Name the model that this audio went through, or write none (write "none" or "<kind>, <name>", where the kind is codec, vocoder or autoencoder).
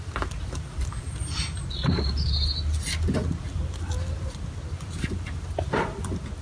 none